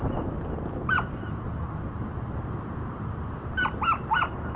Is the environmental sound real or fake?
real